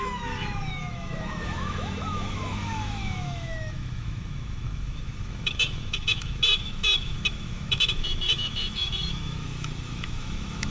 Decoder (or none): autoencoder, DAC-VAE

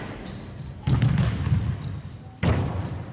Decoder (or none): none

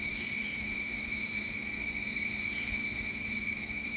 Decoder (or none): autoencoder, DAC-VAE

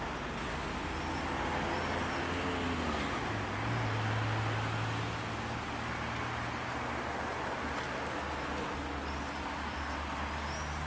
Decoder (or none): none